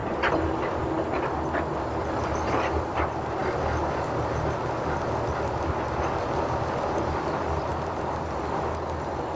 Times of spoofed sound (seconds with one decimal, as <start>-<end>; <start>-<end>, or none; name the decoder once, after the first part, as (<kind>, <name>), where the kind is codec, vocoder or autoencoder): none

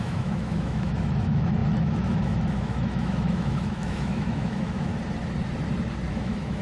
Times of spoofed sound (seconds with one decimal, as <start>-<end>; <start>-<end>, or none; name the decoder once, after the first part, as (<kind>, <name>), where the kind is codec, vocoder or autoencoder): 0.0-4.9 (autoencoder, DAC-VAE); 6.1-6.6

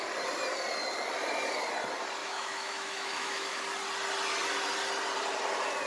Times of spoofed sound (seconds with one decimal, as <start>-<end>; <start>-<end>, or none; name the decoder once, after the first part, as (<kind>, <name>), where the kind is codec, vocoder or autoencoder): 2.2-3.6 (autoencoder, DAC-VAE)

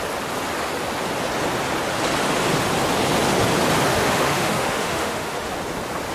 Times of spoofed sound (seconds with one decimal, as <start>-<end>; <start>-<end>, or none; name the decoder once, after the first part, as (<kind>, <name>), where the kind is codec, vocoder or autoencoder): 3.9-5.5 (autoencoder, DAC-VAE)

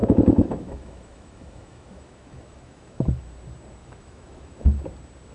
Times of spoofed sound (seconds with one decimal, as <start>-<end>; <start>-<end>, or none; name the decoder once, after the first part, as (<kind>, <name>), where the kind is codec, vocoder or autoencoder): 0.0-3.2 (autoencoder, DAC-VAE); 3.8-4.8

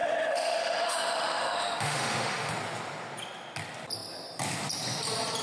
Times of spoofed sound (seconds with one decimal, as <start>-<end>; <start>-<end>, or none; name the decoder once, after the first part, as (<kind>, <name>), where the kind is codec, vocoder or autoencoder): 0.0-2.5 (autoencoder, DAC-VAE)

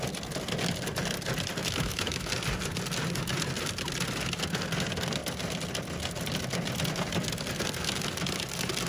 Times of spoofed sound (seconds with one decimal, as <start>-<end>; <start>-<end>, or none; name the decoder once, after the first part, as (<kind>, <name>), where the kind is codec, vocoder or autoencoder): 1.6-2.3 (autoencoder, DAC-VAE)